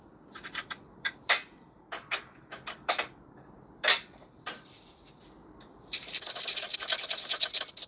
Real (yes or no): no